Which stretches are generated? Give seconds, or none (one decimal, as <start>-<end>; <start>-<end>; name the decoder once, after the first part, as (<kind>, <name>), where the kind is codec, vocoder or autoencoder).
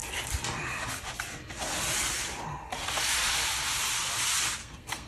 4.6-5.1 (codec, SNAC)